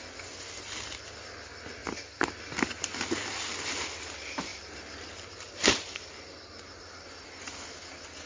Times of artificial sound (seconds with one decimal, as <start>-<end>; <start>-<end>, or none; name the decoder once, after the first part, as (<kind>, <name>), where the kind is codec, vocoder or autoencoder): 4.5-6.3 (vocoder, BigVGAN v2)